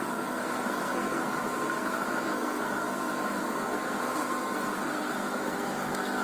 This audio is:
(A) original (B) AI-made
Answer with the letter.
B